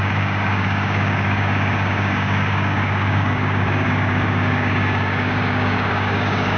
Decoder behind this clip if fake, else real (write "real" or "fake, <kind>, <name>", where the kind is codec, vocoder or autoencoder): fake, codec, DAC